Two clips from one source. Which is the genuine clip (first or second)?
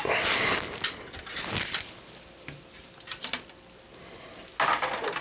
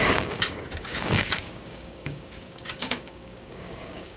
first